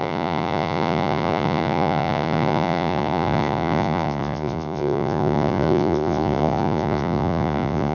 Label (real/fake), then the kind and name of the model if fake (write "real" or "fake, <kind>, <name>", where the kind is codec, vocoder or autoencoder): fake, vocoder, Vocos